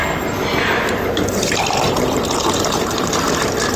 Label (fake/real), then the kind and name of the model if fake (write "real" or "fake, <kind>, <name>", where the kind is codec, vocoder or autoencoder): real